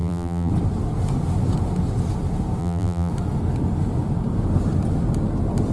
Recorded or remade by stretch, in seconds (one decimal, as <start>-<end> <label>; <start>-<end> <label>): 0.0-0.5 remade; 0.5-2.6 recorded; 2.6-3.1 remade; 3.1-5.7 recorded